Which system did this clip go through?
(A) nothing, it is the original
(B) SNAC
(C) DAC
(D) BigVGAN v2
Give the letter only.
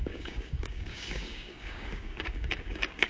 C